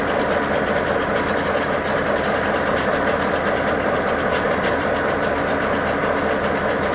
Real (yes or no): yes